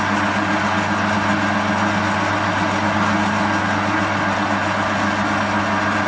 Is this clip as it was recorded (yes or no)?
yes